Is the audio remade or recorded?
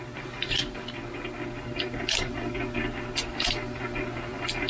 recorded